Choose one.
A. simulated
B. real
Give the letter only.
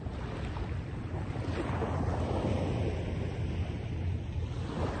B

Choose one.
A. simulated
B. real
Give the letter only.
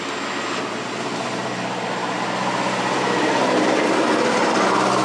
B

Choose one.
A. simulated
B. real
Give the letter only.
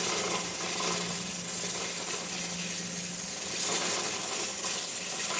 B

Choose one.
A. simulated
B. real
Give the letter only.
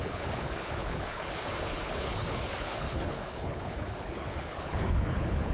A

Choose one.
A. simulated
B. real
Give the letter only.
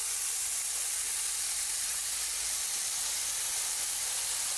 B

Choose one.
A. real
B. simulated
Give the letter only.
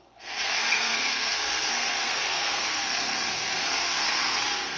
B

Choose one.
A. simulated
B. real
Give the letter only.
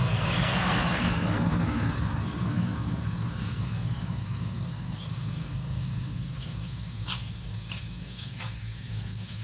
A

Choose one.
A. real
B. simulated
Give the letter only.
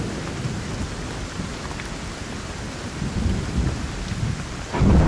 A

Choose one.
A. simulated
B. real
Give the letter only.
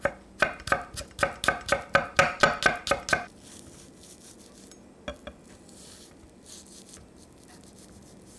B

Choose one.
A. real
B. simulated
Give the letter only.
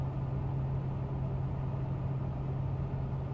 A